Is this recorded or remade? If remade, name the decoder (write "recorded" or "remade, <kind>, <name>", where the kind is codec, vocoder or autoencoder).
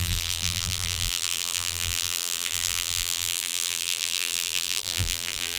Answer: remade, vocoder, BigVGAN v2